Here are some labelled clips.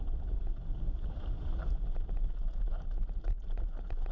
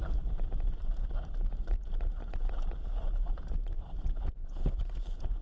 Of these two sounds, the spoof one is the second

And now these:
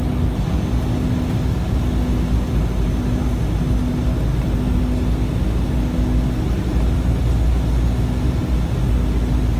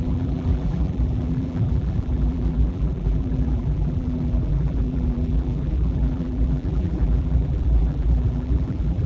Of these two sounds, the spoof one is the second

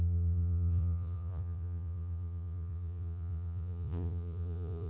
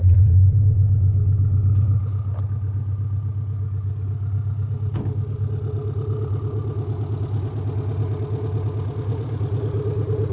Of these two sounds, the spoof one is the first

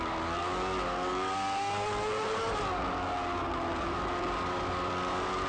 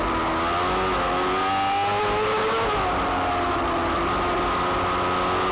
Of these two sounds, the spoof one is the first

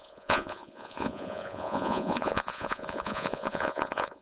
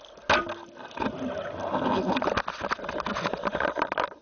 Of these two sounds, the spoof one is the first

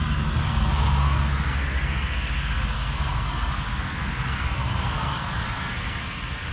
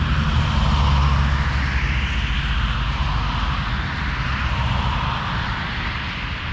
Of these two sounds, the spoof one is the first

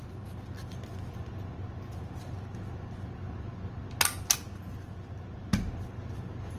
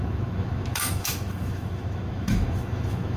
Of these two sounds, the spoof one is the second